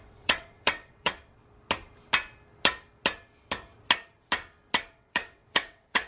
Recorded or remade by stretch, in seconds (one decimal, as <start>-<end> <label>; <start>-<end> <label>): 0.0-1.4 remade; 1.4-4.9 recorded; 4.9-6.1 remade